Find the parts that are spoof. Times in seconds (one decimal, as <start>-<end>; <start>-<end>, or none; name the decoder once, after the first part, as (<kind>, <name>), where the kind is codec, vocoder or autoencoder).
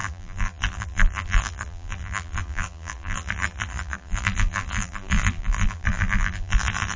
0.0-7.0 (vocoder, BigVGAN v2)